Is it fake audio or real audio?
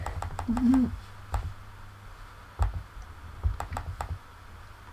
real